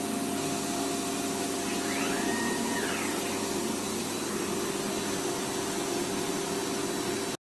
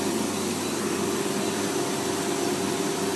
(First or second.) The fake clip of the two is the second